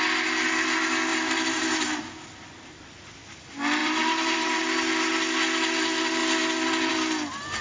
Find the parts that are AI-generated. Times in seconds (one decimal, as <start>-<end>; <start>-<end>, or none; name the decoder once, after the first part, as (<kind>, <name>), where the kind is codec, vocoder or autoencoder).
1.1-2.1 (vocoder, BigVGAN v2); 3.8-4.6